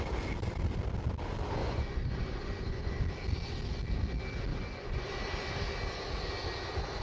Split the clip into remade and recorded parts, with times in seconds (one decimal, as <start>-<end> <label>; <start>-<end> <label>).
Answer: 0.0-1.6 recorded; 1.6-3.0 remade; 3.0-4.5 recorded; 4.5-5.1 remade; 5.1-7.0 recorded